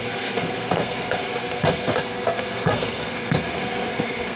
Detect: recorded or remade remade